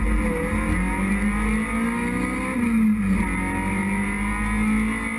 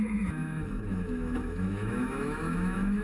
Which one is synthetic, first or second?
second